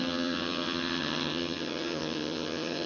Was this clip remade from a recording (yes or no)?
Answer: yes